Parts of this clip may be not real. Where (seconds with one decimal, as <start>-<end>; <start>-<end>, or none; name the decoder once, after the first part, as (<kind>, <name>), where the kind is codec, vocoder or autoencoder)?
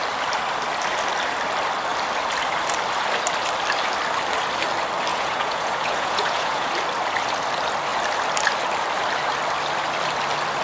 5.1-6.7 (vocoder, Vocos)